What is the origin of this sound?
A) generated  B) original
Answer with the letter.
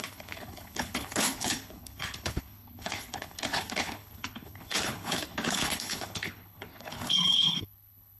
A